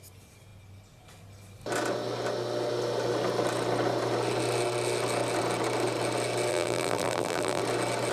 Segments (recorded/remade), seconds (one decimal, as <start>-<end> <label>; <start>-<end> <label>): 0.0-6.5 recorded; 6.5-7.6 remade; 7.6-8.1 recorded